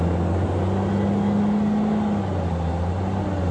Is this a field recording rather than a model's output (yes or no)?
yes